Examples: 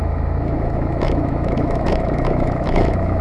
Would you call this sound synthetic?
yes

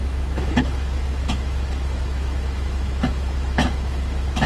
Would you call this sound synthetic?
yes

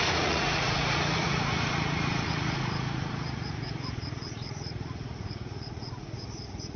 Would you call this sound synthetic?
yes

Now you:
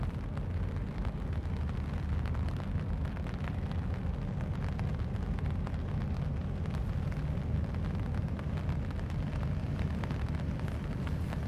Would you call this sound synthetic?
no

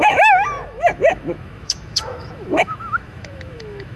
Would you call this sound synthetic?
yes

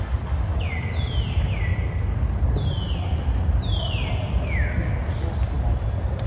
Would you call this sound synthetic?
no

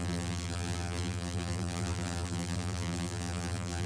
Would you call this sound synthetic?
yes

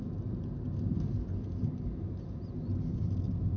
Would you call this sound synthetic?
no